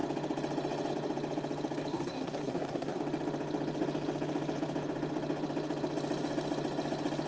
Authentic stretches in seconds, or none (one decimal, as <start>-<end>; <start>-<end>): 0.0-1.9; 3.0-7.3